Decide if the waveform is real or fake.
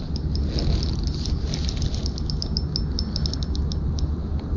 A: real